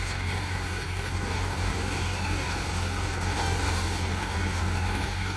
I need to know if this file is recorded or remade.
remade